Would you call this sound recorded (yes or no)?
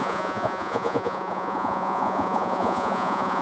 no